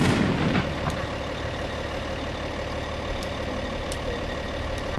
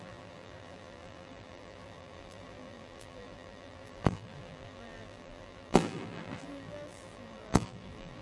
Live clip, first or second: first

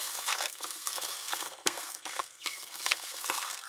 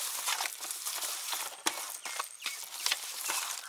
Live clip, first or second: second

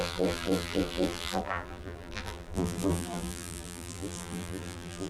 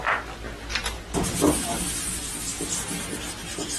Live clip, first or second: second